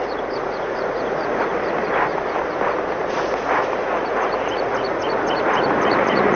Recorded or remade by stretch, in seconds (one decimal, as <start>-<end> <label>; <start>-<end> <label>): 0.0-1.5 remade; 1.5-3.1 recorded; 3.1-6.4 remade